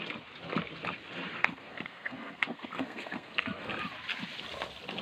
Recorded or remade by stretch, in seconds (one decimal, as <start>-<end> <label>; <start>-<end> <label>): 0.0-1.3 recorded; 1.3-3.7 remade; 3.7-5.0 recorded